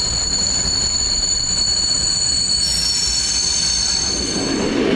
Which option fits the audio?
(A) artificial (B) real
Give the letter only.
B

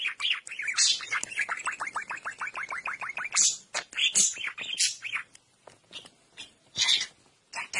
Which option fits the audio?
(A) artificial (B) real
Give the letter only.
B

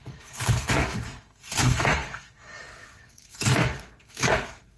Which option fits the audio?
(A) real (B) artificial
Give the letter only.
B